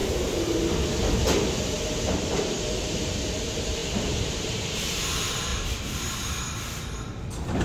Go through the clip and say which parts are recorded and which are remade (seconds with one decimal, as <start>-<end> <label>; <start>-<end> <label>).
0.0-2.3 recorded; 2.3-5.5 remade; 5.5-7.6 recorded